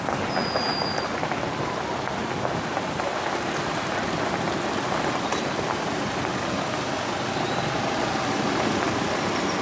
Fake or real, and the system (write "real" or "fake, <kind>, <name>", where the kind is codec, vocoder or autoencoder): real